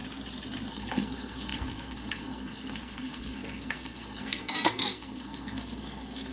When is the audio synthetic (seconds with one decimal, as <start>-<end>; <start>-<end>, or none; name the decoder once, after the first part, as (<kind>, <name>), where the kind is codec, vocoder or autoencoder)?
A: 0.7-6.3 (codec, SNAC)